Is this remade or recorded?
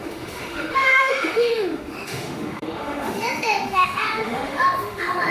remade